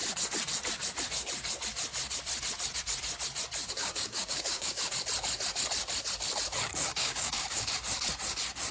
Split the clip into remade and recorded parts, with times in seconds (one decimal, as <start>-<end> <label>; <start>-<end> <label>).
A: 0.0-3.8 recorded; 3.8-4.9 remade; 4.9-6.9 recorded; 6.9-7.7 remade; 7.7-8.7 recorded